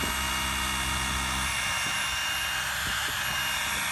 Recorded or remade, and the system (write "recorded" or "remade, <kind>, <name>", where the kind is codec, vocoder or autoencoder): recorded